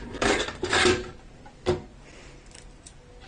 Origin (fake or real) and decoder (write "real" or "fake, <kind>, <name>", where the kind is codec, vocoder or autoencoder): real